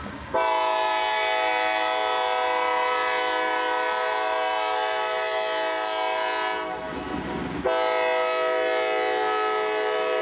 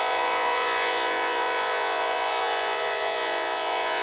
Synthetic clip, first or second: second